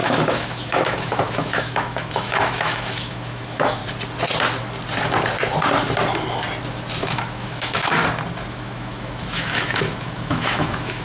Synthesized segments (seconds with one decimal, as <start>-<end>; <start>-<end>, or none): 0.0-3.8; 7.0-8.0; 8.5-11.0